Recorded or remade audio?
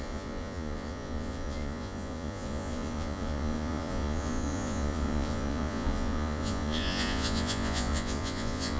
remade